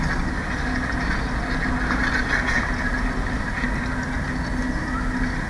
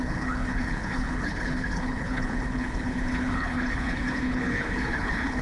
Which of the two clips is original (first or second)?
first